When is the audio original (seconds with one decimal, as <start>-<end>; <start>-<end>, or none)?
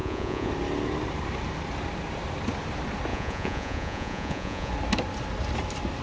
0.5-3.1; 4.7-6.0